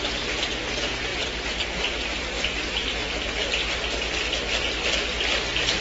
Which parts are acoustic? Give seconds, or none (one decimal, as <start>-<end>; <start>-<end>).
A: 0.0-1.1; 2.2-5.8